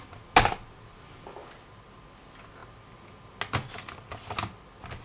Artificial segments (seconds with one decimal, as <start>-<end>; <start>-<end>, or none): none